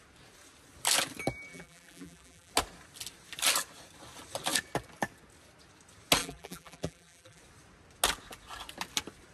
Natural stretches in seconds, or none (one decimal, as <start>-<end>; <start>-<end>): 0.0-1.5; 2.5-6.2; 7.4-9.3